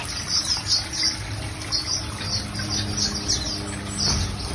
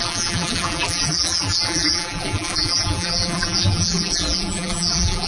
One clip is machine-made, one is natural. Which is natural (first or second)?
first